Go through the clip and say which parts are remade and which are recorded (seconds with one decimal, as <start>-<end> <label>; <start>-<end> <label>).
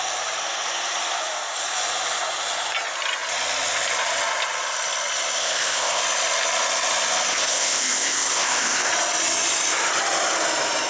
0.0-5.4 recorded; 5.4-6.0 remade; 6.0-7.3 recorded; 7.3-8.9 remade; 8.9-10.9 recorded